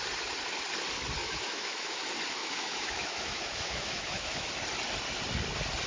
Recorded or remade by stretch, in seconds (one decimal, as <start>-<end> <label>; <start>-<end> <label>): 0.0-1.2 recorded; 1.2-2.0 remade; 2.0-2.4 recorded; 2.4-4.5 remade; 4.5-5.9 recorded